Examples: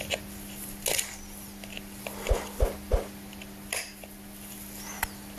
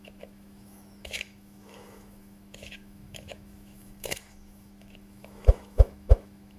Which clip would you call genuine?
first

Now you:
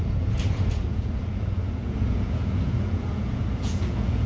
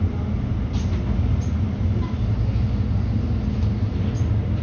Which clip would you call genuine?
second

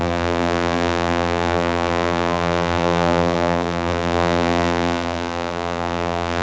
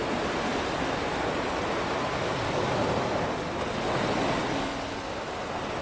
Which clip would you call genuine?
second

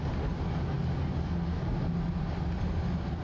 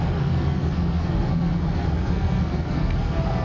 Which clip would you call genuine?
first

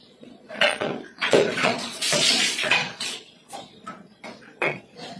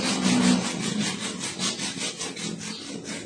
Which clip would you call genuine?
second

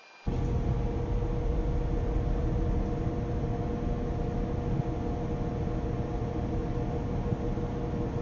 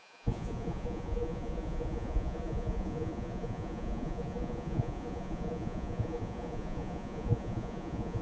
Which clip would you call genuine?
first